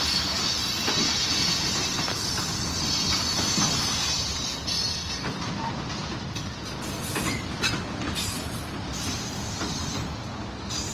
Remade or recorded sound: recorded